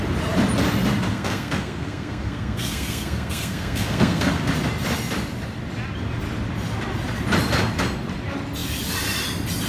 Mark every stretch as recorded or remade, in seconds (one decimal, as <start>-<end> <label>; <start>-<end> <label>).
0.0-1.1 recorded; 1.1-4.5 remade; 4.5-9.7 recorded